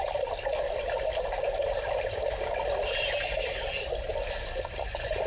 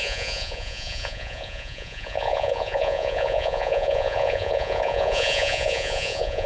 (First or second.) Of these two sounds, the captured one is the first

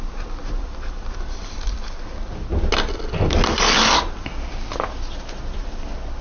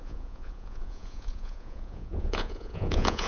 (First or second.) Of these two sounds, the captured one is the first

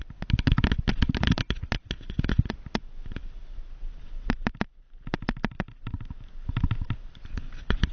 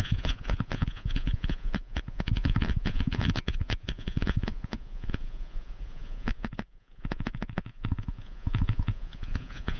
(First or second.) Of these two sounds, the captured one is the first